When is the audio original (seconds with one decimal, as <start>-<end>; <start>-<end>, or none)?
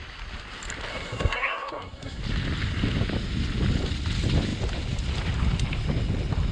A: 0.0-0.9; 2.2-6.5